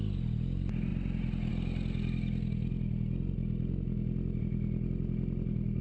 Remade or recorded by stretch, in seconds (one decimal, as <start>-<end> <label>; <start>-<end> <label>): 0.0-5.8 recorded